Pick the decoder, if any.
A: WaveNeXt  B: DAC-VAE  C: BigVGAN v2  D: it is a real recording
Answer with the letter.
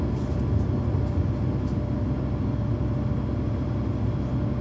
D